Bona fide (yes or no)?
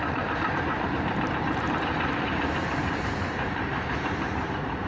no